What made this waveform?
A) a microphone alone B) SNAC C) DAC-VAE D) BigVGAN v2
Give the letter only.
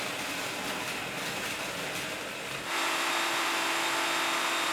A